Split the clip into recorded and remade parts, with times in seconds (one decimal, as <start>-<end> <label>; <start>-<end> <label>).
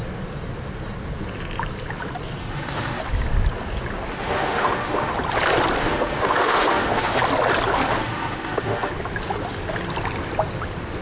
0.0-2.4 recorded; 2.4-3.0 remade; 3.0-4.1 recorded; 4.1-5.1 remade; 5.1-5.8 recorded; 5.8-7.2 remade; 7.2-8.0 recorded; 8.0-8.9 remade; 8.9-11.0 recorded